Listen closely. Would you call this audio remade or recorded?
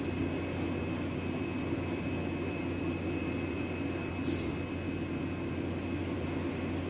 recorded